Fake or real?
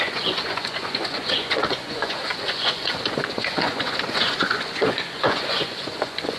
fake